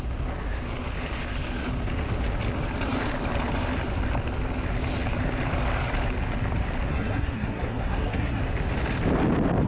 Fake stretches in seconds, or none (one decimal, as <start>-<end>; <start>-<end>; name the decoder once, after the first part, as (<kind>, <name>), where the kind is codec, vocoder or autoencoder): 6.9-8.4 (codec, SNAC)